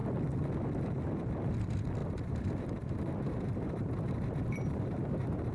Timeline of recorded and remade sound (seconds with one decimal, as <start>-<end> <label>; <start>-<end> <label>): 0.0-2.0 recorded; 2.0-5.5 remade